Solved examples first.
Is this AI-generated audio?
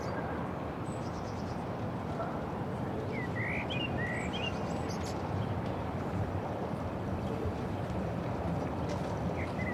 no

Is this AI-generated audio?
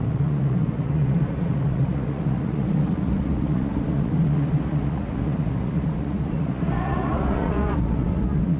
yes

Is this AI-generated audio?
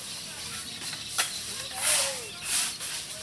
no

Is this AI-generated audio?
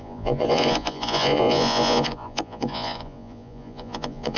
yes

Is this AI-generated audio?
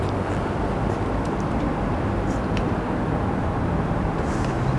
no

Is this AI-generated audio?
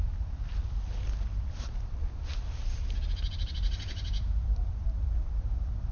yes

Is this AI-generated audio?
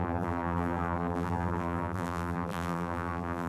yes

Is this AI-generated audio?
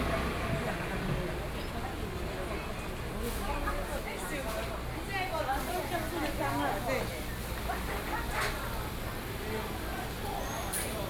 no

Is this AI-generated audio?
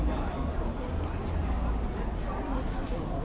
no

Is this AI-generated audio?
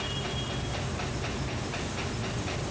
no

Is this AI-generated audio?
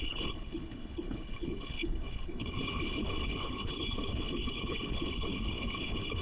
yes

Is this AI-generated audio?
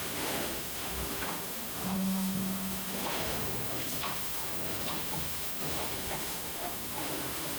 yes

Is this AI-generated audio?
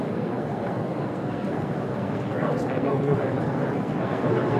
yes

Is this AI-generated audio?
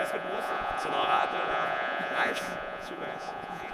yes